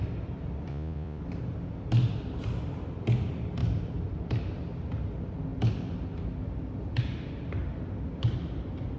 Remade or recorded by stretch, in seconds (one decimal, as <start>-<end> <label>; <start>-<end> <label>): 0.0-0.7 recorded; 0.7-1.2 remade; 1.2-9.0 recorded

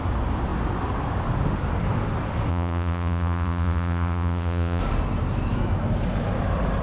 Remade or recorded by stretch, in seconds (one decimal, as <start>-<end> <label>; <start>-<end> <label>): 0.0-2.5 recorded; 2.5-4.8 remade; 4.8-6.8 recorded

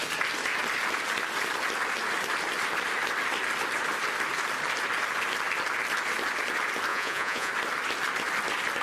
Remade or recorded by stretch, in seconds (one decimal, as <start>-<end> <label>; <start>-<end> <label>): 0.0-6.9 recorded; 6.9-7.5 remade; 7.5-8.8 recorded

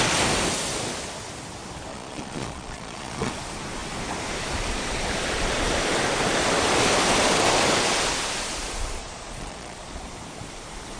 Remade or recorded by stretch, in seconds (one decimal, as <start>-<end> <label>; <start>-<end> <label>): 0.0-1.9 recorded; 1.9-3.3 remade; 3.3-9.0 recorded; 9.0-10.0 remade; 10.0-11.0 recorded

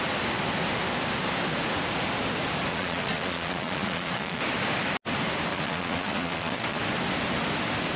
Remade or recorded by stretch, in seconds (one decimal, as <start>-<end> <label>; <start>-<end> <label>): 0.0-2.7 recorded; 2.7-4.4 remade; 4.4-5.5 recorded; 5.5-6.8 remade; 6.8-8.0 recorded

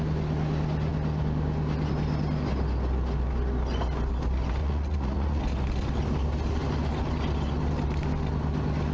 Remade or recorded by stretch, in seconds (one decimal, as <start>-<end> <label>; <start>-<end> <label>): 0.0-4.6 recorded; 4.6-5.4 remade; 5.4-8.9 recorded

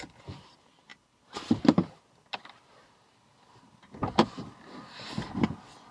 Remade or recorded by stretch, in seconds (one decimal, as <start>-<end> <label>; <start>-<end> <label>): 0.0-5.9 recorded

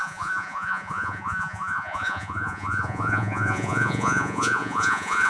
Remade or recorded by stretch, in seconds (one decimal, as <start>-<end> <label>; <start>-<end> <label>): 0.0-5.3 remade